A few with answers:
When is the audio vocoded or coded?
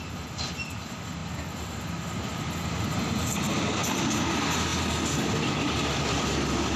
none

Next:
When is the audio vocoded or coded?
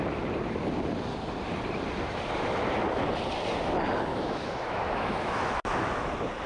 4.1-6.1 (autoencoder, DAC-VAE)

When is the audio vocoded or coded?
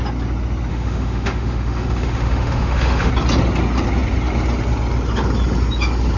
0.7-3.1 (autoencoder, DAC-VAE)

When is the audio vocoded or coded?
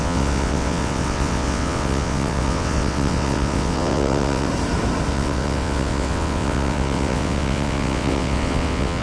0.0-4.5 (vocoder, WaveNeXt); 5.1-9.0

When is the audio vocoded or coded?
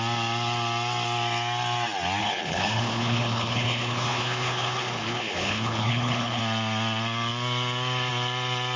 2.2-6.4 (codec, HILCodec)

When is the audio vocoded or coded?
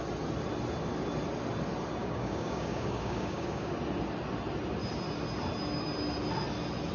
2.0-3.7 (codec, DAC)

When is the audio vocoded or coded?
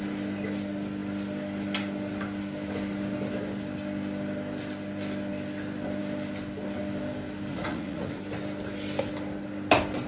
7.5-8.2 (vocoder, Vocos)